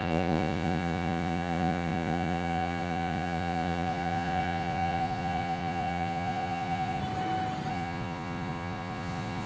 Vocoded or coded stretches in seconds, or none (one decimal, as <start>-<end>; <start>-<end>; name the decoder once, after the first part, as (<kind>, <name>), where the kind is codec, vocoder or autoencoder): 0.0-7.0 (vocoder, Vocos); 7.7-9.5